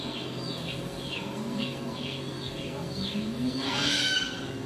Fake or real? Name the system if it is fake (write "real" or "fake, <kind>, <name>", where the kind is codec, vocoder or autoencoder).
fake, codec, SNAC